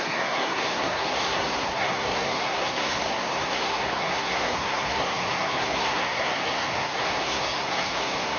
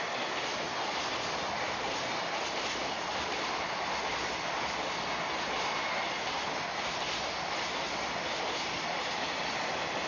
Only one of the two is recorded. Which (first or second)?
second